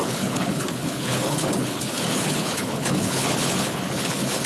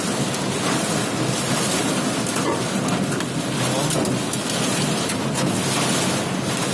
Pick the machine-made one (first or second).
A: first